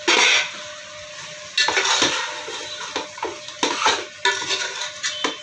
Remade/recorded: recorded